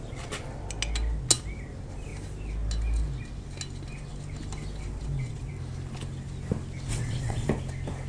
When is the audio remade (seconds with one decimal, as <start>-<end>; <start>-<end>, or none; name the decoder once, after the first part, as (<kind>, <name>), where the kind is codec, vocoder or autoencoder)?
6.9-7.5 (vocoder, WaveNeXt)